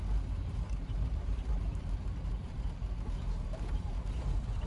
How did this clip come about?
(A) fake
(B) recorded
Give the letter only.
A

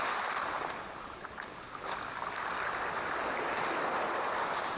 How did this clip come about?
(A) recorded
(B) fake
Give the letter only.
A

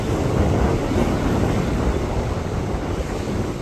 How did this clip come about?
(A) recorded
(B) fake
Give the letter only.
A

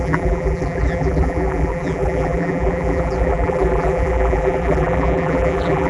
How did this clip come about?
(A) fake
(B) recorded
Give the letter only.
A